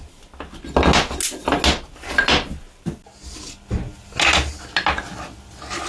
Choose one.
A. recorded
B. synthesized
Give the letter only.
A